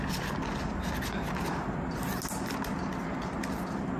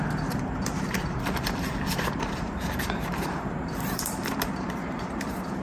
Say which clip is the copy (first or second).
second